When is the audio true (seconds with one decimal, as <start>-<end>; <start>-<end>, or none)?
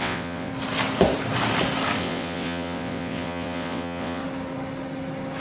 0.5-2.0; 4.2-5.4